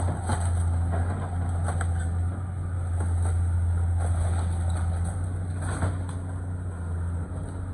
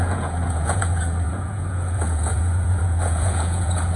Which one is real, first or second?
first